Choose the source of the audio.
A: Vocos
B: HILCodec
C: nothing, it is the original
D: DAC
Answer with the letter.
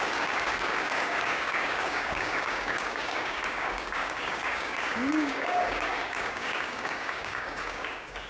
D